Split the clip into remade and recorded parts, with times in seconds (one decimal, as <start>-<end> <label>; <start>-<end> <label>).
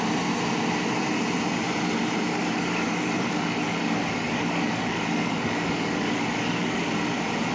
0.0-2.3 recorded; 2.3-6.8 remade; 6.8-7.5 recorded